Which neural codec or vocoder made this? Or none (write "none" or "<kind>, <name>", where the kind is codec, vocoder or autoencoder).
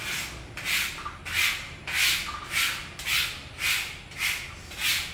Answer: none